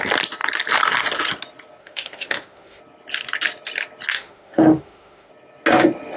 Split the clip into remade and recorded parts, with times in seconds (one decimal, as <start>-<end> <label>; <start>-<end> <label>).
0.0-1.8 recorded; 1.8-2.8 remade; 2.8-4.1 recorded; 4.1-5.3 remade; 5.3-6.2 recorded